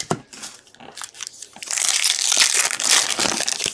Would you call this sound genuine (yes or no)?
yes